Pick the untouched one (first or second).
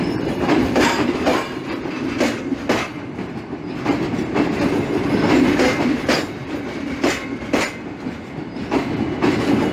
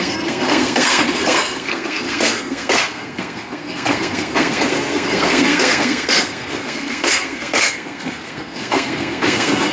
first